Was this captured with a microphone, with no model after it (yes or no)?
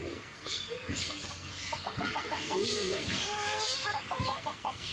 no